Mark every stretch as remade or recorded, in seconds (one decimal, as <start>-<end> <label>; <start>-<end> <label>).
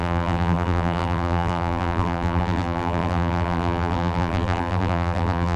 0.0-5.6 remade